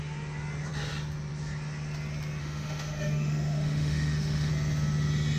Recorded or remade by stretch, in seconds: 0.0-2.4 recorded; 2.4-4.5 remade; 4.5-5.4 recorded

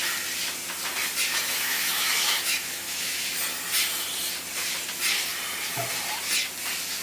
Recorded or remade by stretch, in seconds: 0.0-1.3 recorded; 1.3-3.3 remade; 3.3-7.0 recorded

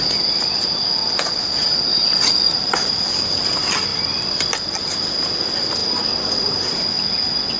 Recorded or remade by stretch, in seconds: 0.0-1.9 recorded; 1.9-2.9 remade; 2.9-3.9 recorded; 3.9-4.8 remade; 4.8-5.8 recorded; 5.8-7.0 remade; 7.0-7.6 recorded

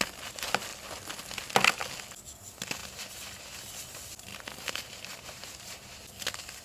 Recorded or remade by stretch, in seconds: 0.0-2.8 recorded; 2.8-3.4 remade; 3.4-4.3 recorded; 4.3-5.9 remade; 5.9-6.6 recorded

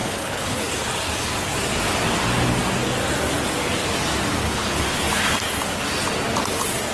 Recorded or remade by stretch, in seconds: 0.0-0.6 remade; 0.6-4.4 recorded; 4.4-5.0 remade; 5.0-6.9 recorded

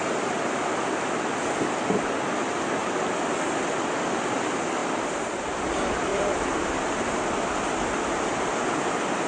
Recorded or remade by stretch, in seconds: 0.0-4.8 recorded; 4.8-5.5 remade; 5.5-6.1 recorded; 6.1-7.2 remade; 7.2-9.3 recorded

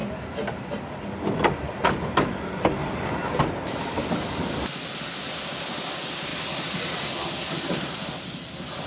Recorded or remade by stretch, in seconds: 0.0-2.8 recorded; 2.8-3.4 remade; 3.4-6.3 recorded; 6.3-7.1 remade; 7.1-8.9 recorded